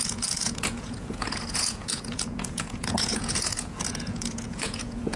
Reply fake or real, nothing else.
fake